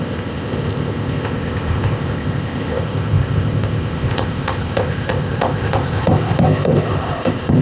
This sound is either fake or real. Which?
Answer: fake